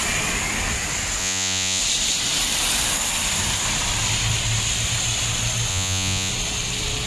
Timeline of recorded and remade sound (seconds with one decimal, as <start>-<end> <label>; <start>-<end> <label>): 0.0-1.2 recorded; 1.2-1.8 remade; 1.8-5.7 recorded; 5.7-6.3 remade; 6.3-7.1 recorded